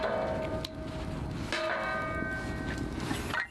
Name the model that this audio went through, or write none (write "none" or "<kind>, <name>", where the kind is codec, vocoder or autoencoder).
none